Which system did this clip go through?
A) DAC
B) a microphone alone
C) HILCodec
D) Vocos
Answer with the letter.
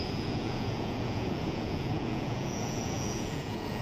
D